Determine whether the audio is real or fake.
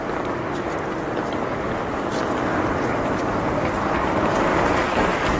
real